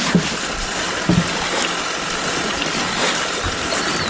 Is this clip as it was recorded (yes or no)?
yes